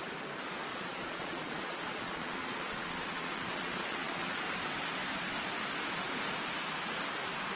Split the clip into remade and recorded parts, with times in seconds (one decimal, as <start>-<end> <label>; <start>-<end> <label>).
0.0-0.7 recorded; 0.7-4.4 remade; 4.4-7.6 recorded

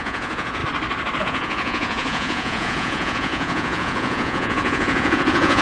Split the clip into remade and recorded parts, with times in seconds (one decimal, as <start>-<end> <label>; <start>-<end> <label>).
0.0-0.6 remade; 0.6-1.2 recorded; 1.2-5.6 remade